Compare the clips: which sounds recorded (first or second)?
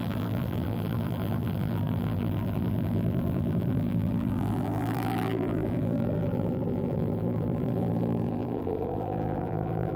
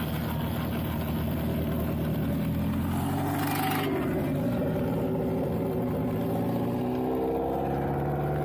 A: second